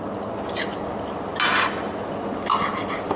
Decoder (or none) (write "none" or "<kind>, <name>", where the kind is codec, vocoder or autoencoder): none